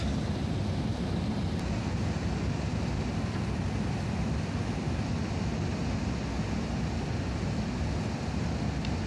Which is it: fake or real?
real